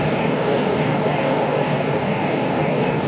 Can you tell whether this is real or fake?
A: fake